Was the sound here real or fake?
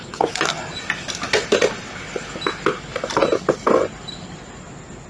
real